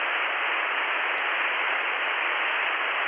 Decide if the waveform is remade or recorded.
recorded